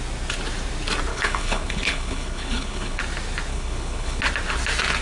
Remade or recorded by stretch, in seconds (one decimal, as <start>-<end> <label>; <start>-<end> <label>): 0.0-1.1 recorded; 1.1-3.0 remade; 3.0-3.5 recorded; 3.5-4.2 remade; 4.2-5.0 recorded